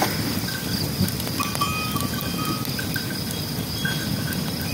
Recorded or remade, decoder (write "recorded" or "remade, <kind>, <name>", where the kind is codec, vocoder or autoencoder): recorded